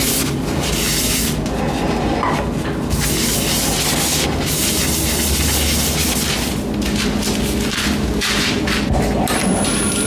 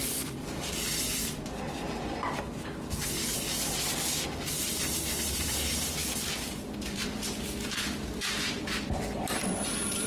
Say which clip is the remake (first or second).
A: second